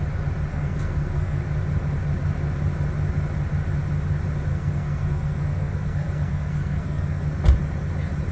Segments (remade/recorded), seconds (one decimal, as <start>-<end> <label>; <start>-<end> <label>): 0.0-0.5 recorded; 0.5-1.4 remade; 1.4-4.5 recorded; 4.5-7.2 remade; 7.2-8.3 recorded